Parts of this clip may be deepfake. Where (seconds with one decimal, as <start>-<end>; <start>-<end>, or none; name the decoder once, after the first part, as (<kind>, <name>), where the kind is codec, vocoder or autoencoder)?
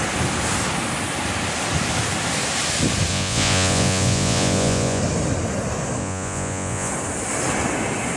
3.1-5.0 (vocoder, Vocos); 6.0-6.9